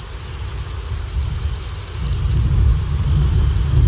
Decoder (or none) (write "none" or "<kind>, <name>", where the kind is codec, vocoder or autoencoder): none